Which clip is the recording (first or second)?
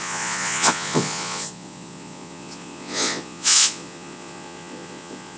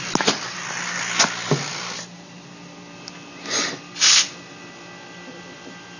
second